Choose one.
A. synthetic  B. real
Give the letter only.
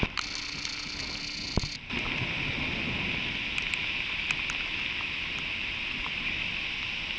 B